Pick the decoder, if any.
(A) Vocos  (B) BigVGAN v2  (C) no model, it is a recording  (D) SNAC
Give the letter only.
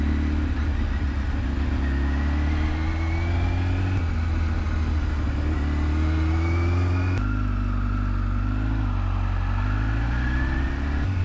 C